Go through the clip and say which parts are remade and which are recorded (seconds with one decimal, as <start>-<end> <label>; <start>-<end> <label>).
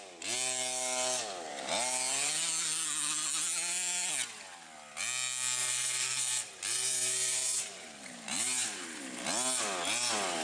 0.0-5.6 recorded; 5.6-9.0 remade; 9.0-10.4 recorded